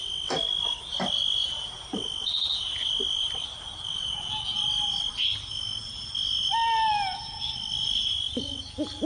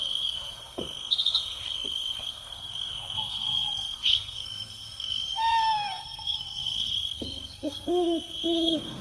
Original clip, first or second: first